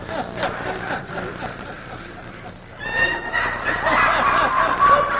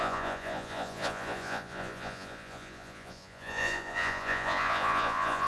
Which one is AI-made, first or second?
second